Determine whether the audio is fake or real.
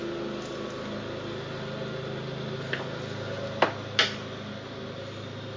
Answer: real